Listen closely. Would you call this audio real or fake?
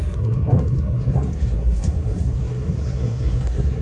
fake